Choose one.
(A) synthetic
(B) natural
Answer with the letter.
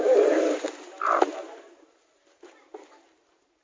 A